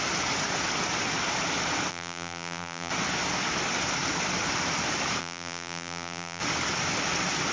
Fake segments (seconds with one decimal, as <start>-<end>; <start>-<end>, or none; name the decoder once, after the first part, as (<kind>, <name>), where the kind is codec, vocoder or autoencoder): 1.9-2.9 (vocoder, BigVGAN v2); 5.2-6.4